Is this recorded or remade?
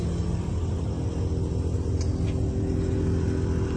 recorded